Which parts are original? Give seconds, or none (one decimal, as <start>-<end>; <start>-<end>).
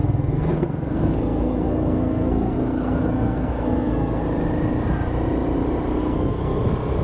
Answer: 4.2-6.0; 6.6-7.0